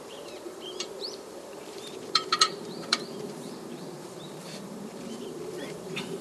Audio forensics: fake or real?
fake